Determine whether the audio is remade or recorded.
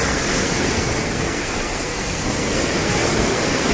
remade